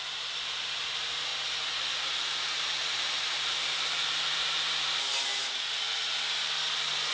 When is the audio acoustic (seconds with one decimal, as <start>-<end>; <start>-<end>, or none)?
1.3-2.0